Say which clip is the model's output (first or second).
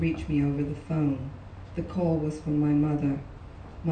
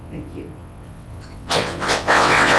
second